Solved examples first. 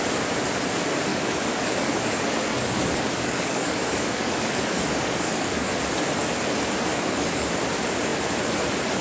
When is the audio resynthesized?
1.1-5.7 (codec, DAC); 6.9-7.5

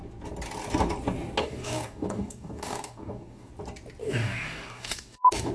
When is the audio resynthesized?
1.4-3.5 (codec, DAC); 4.0-5.5

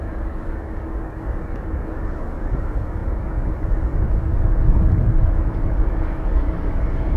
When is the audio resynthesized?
0.0-7.2 (codec, DAC)

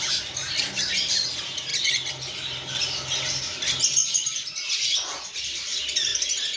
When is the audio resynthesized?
none

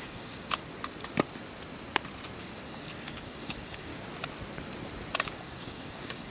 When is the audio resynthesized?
0.0-0.6 (codec, DAC); 2.4-3.9; 5.2-6.3

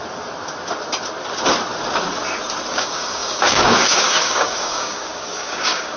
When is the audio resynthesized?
2.7-6.0 (codec, DAC)

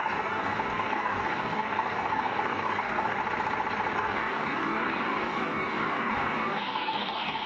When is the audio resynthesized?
0.0-3.2 (codec, DAC); 3.9-7.5